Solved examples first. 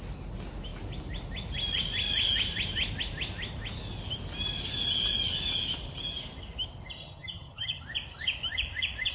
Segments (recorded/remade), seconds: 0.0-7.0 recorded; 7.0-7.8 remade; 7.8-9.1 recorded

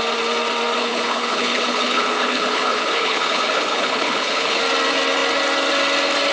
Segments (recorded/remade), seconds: 0.0-0.8 recorded; 0.8-4.6 remade; 4.6-6.3 recorded

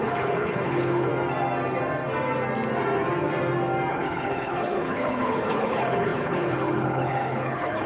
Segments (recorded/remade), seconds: 0.0-1.1 remade; 1.1-3.9 recorded; 3.9-7.9 remade